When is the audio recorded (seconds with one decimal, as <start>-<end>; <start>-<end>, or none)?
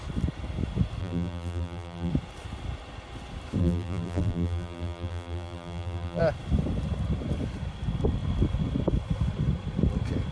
0.0-1.0; 2.1-3.6; 6.2-10.3